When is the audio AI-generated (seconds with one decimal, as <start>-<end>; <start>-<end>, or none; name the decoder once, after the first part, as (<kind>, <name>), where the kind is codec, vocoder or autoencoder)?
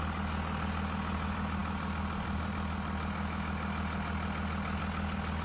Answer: none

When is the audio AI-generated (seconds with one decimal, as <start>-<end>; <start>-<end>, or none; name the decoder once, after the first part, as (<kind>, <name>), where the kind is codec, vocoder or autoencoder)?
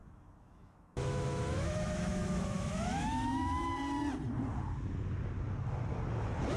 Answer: 0.0-3.7 (autoencoder, DAC-VAE)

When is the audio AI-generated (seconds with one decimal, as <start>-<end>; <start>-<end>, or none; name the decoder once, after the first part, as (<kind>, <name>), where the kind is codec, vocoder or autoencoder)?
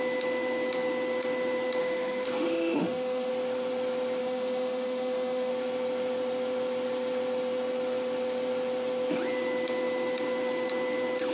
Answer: 1.8-3.3 (autoencoder, DAC-VAE); 4.2-5.5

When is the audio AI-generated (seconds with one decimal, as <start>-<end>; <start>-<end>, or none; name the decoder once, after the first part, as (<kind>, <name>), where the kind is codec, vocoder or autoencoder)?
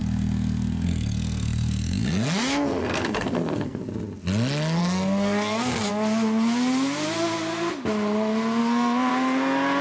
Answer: 0.0-3.8 (codec, SNAC); 4.8-5.9; 8.6-9.1